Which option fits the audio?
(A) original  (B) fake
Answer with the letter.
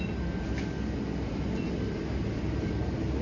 A